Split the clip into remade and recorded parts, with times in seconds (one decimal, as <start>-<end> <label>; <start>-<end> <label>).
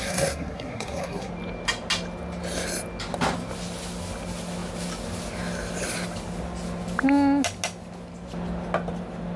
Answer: 0.0-1.3 remade; 1.3-9.4 recorded